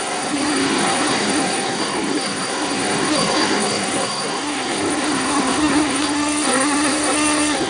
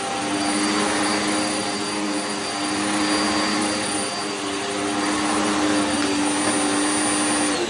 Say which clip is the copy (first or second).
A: first